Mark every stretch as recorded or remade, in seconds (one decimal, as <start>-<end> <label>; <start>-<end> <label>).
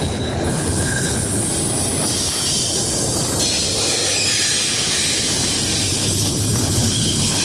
0.0-1.5 remade; 1.5-5.9 recorded; 5.9-7.4 remade